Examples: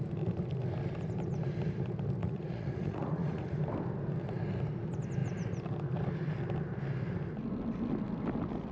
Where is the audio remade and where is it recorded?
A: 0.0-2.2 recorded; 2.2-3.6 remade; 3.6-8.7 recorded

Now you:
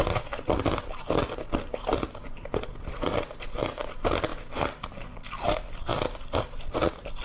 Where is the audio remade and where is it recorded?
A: 0.0-7.2 recorded

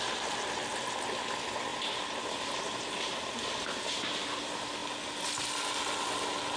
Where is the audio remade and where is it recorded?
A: 0.0-6.6 recorded